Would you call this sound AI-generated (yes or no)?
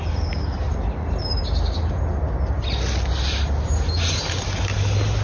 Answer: no